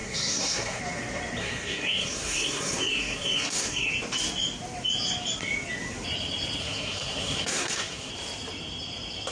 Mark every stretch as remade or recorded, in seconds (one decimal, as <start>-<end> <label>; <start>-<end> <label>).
0.0-0.8 remade; 0.8-1.4 recorded; 1.4-3.9 remade; 3.9-6.6 recorded; 6.6-8.1 remade; 8.1-9.3 recorded